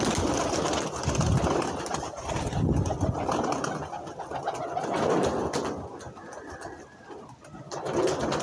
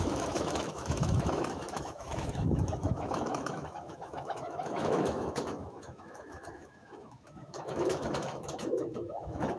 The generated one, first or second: second